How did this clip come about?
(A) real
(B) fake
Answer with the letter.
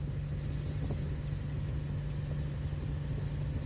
A